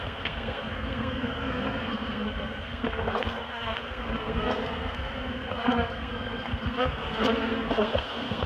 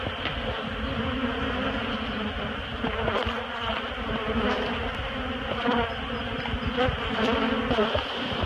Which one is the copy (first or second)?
first